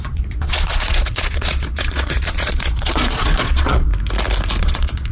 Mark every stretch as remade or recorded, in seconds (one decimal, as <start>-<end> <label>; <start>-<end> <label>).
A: 0.0-3.9 remade; 3.9-4.6 recorded; 4.6-5.1 remade